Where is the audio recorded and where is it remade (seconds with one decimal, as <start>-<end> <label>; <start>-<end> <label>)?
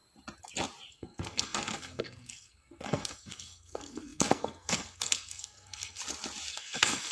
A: 0.0-0.9 recorded; 0.9-6.0 remade; 6.0-6.5 recorded; 6.5-7.1 remade